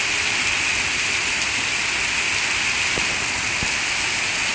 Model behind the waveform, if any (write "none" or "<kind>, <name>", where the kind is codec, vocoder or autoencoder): none